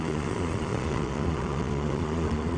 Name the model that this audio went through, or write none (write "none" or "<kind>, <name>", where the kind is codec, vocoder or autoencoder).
vocoder, Vocos